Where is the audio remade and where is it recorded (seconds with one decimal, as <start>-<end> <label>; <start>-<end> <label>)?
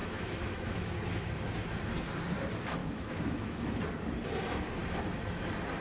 0.0-0.9 remade; 0.9-2.8 recorded; 2.8-3.8 remade; 3.8-5.8 recorded